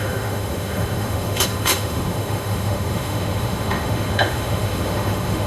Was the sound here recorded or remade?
remade